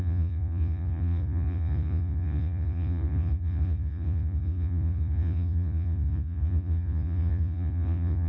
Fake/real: fake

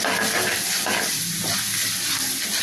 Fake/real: real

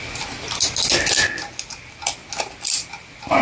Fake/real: real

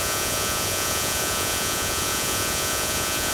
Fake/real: fake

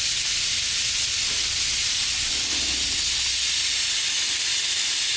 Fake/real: real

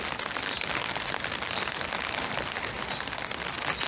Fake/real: real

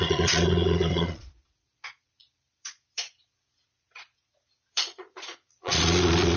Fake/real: fake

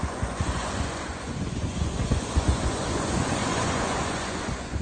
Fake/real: fake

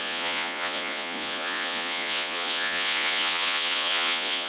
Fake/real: fake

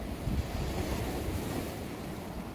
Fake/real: real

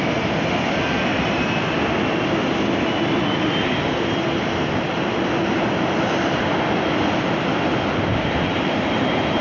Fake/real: real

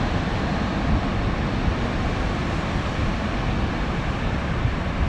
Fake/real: real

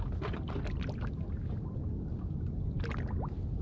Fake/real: real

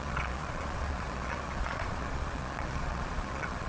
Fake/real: fake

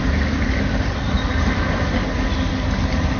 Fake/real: real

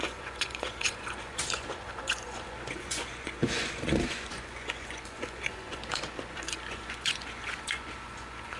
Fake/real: fake